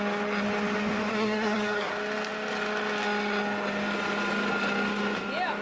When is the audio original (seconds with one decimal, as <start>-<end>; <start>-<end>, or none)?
0.0-1.1; 1.9-5.6